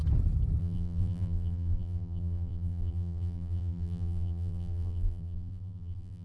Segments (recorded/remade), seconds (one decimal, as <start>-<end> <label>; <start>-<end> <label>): 0.0-0.6 recorded; 0.6-6.2 remade